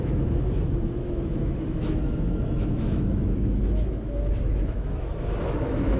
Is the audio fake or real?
fake